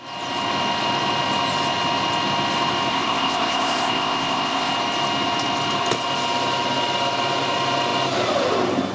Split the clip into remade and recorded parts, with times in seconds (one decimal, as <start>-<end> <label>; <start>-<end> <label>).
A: 0.0-2.9 recorded; 2.9-4.7 remade; 4.7-8.9 recorded